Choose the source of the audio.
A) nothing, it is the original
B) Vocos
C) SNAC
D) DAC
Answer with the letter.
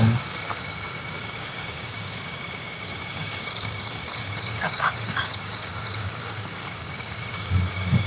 D